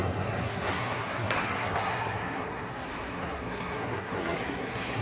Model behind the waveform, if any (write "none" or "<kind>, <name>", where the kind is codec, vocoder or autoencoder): codec, SNAC